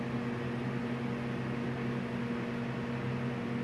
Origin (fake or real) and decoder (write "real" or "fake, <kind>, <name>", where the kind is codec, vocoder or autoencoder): real